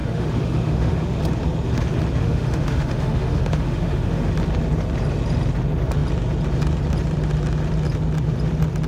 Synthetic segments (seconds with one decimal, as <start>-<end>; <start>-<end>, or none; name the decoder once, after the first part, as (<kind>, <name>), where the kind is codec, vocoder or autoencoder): 0.0-1.2 (autoencoder, DAC-VAE); 2.2-4.3

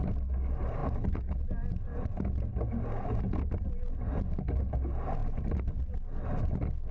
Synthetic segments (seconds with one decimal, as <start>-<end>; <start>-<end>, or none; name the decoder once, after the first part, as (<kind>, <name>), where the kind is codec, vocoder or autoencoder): none